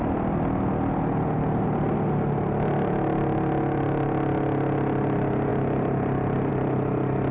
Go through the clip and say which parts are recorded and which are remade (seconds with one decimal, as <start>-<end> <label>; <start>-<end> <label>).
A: 0.0-7.3 recorded